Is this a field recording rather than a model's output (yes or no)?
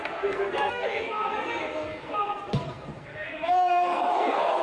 no